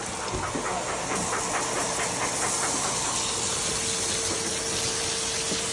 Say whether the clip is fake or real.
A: real